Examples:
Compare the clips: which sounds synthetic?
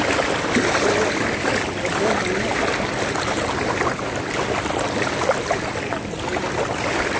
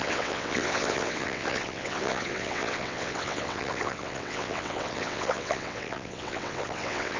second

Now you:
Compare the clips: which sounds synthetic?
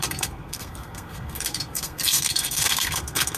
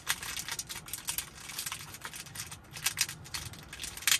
first